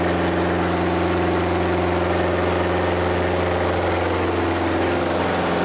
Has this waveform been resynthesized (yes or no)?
no